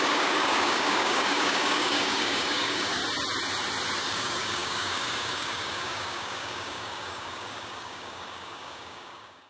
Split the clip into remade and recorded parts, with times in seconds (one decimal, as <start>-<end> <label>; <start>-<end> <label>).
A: 0.0-3.0 remade; 3.0-4.0 recorded; 4.0-9.5 remade